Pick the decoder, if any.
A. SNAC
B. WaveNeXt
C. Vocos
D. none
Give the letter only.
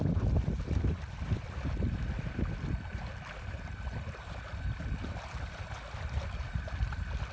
D